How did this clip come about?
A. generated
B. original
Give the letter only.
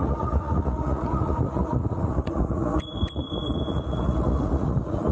A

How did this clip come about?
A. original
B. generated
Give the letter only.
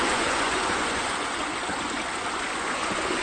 B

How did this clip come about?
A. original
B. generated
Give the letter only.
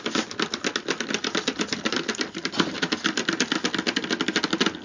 A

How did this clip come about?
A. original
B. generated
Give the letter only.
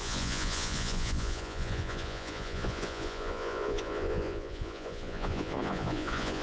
B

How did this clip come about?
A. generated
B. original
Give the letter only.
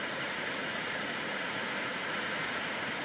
A